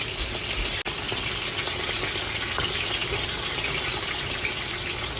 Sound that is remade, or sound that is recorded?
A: recorded